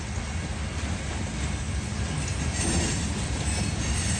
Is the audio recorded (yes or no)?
yes